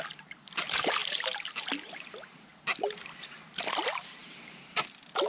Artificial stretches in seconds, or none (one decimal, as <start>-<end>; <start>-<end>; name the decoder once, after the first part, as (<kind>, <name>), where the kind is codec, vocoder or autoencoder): 4.2-4.8 (vocoder, BigVGAN v2)